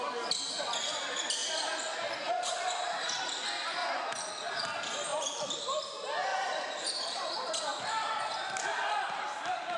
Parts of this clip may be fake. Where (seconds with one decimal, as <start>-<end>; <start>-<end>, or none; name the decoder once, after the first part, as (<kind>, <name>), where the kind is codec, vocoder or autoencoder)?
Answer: 3.8-4.3 (vocoder, BigVGAN v2); 5.1-5.8; 6.3-7.5